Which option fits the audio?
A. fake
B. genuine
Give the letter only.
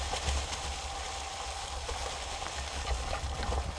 B